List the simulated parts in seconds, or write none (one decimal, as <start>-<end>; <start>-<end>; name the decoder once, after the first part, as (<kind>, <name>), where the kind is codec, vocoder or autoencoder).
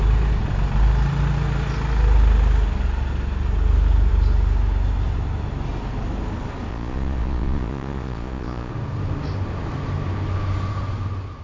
6.7-8.7 (vocoder, Vocos)